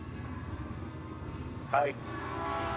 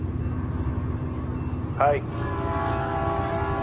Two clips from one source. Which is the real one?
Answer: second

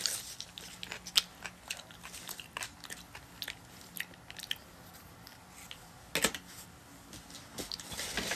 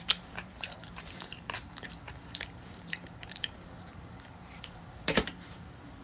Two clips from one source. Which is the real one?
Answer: first